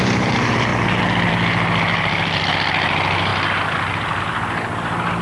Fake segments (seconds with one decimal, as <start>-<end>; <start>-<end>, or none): 1.9-2.5